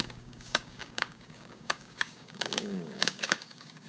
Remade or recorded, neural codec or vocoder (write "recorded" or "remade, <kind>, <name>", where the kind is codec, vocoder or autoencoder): remade, codec, DAC